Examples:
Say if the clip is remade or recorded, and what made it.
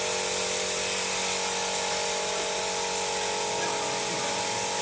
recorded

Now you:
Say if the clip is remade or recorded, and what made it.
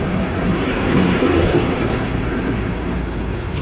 remade, codec, SNAC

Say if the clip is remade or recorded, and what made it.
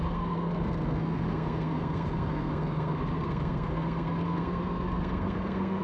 remade, codec, SNAC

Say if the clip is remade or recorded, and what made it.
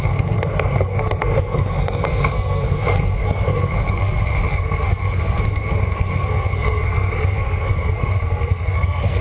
remade, codec, SNAC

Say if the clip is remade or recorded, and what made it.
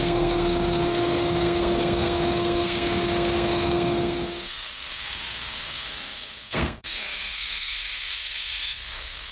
remade, codec, SNAC